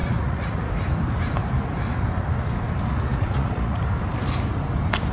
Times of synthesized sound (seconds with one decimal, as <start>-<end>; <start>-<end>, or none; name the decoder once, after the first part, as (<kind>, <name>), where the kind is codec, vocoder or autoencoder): 0.0-0.7 (vocoder, Vocos); 3.1-3.8